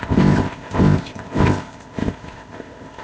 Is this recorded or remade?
remade